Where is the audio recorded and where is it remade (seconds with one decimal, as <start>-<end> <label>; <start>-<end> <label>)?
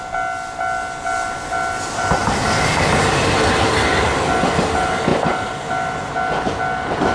0.0-2.2 recorded; 2.2-3.2 remade; 3.2-7.1 recorded